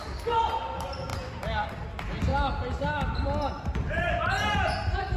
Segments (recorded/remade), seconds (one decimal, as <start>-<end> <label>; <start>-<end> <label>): 0.0-5.2 recorded